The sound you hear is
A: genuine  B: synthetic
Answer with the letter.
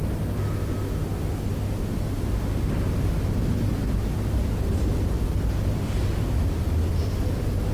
A